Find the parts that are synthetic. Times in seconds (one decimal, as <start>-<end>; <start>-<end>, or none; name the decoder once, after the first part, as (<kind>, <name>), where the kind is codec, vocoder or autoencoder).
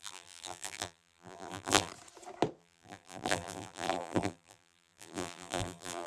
0.0-1.9 (vocoder, BigVGAN v2); 2.6-6.1